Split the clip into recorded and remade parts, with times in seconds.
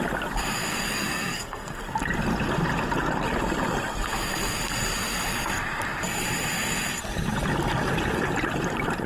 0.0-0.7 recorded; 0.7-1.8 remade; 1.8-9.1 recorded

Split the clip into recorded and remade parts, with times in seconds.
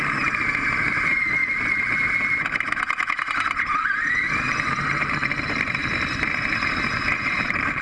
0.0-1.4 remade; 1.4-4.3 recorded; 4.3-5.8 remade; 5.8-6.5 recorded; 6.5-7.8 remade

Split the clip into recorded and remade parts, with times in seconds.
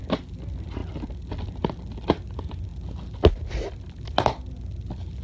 0.0-5.2 recorded